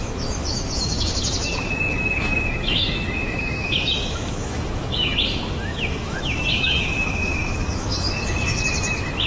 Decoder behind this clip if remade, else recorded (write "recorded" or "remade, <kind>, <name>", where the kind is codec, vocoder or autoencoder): remade, autoencoder, DAC-VAE